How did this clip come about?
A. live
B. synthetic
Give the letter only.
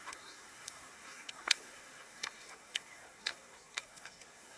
B